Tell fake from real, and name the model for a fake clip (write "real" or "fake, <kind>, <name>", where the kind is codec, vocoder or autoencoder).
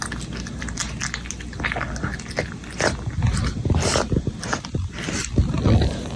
real